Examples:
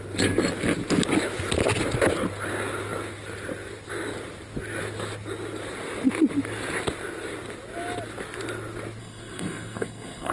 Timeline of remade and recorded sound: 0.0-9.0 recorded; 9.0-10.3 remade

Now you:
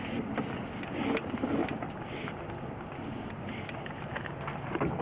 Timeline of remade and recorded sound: 0.0-5.0 recorded

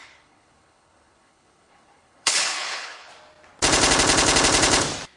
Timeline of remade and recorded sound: 0.0-3.1 remade; 3.1-5.2 recorded